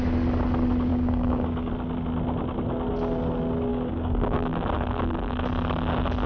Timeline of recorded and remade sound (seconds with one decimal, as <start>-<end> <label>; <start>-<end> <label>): 0.0-0.9 recorded; 0.9-1.7 remade; 1.7-3.7 recorded; 3.7-4.5 remade; 4.5-6.3 recorded